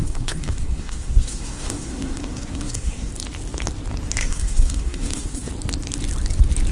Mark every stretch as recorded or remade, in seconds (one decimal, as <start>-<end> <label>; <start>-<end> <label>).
0.0-3.1 remade; 3.1-4.2 recorded; 4.2-5.5 remade; 5.5-6.7 recorded